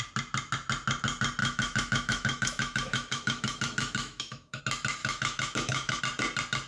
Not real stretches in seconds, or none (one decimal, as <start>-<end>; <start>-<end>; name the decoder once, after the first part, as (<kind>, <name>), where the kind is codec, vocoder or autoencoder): 1.4-4.6 (autoencoder, DAC-VAE); 5.0-6.0